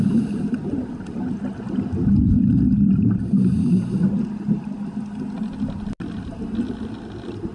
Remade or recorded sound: recorded